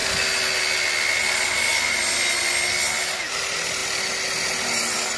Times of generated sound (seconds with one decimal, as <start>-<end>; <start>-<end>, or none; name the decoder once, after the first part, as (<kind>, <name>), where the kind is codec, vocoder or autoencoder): none